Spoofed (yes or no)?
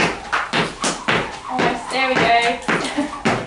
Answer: no